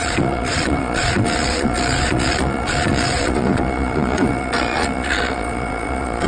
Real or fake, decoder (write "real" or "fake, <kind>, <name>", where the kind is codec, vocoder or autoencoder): fake, vocoder, Vocos